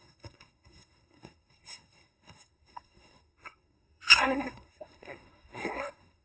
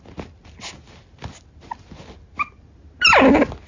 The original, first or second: second